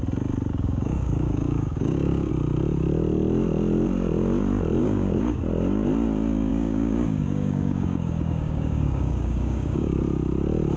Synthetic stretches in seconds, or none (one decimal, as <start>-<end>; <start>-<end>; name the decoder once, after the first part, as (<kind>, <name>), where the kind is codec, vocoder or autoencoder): 0.5-2.3 (codec, DAC); 4.8-5.4; 6.5-10.0